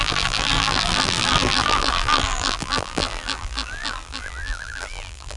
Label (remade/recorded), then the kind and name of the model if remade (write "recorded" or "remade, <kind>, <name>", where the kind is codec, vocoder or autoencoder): remade, vocoder, BigVGAN v2